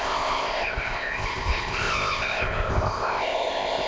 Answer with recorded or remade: remade